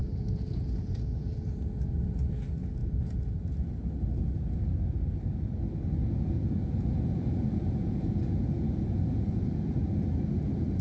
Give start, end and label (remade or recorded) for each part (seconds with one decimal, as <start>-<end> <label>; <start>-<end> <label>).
0.0-1.6 remade; 1.6-2.8 recorded; 2.8-3.3 remade; 3.3-6.0 recorded; 6.0-9.6 remade; 9.6-10.8 recorded